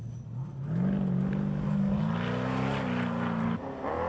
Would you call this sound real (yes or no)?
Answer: yes